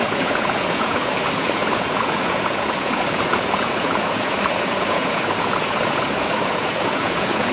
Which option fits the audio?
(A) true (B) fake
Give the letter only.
B